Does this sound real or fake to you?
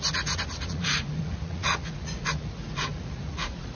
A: fake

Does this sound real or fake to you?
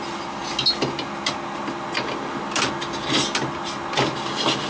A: real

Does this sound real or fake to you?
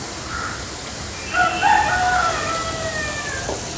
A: real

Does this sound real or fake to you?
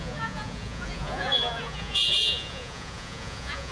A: fake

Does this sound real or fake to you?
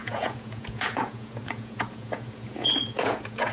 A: fake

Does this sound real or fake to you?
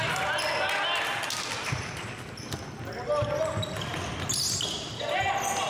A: real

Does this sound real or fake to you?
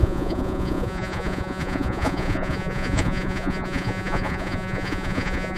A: fake